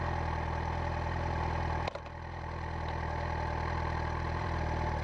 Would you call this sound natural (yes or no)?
no